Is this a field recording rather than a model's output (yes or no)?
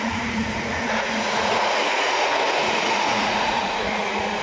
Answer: no